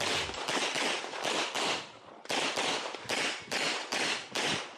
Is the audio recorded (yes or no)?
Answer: yes